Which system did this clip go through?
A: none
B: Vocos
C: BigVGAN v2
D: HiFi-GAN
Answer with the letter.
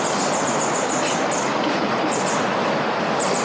A